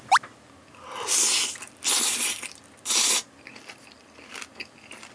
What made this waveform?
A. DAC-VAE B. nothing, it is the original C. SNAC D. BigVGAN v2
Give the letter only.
B